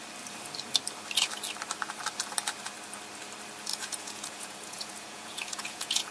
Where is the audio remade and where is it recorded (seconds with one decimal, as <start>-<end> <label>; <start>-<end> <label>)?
0.0-3.7 recorded; 3.7-6.1 remade